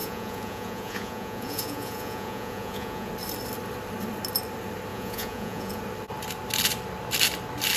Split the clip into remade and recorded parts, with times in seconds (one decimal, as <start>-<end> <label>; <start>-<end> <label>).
0.0-3.1 remade; 3.1-4.9 recorded; 4.9-5.8 remade; 5.8-7.8 recorded